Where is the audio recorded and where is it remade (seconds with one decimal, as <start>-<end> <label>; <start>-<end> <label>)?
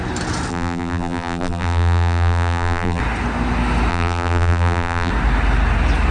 0.0-0.5 recorded; 0.5-3.0 remade; 3.0-3.9 recorded; 3.9-5.1 remade; 5.1-6.1 recorded